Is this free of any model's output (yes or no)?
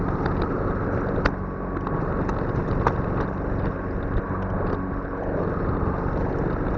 yes